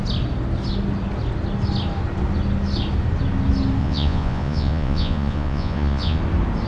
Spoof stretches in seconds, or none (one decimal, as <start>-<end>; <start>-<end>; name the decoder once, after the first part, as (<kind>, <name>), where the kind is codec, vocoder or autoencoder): 3.8-6.2 (vocoder, Vocos)